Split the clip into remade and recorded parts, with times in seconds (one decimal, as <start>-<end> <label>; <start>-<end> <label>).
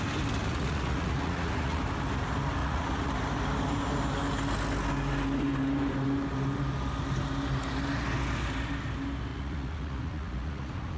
0.0-0.5 recorded; 0.5-1.8 remade; 1.8-2.6 recorded; 2.6-3.1 remade; 3.1-9.3 recorded; 9.3-11.0 remade